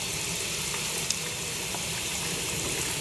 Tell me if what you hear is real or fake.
real